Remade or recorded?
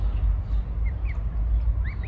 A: recorded